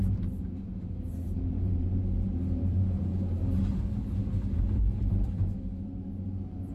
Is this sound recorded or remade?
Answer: remade